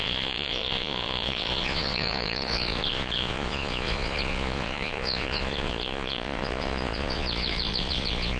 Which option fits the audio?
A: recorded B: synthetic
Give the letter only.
B